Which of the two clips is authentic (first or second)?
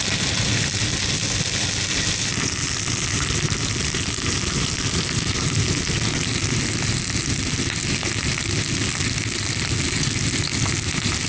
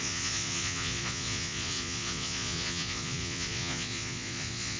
first